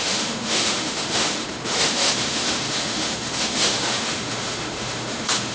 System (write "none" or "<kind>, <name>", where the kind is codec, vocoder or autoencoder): autoencoder, DAC-VAE